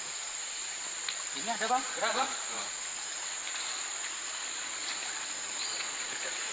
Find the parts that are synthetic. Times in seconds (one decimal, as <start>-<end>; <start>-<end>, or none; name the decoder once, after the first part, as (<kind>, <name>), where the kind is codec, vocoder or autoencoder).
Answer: 0.0-0.6 (vocoder, Vocos); 1.7-2.9; 5.8-6.5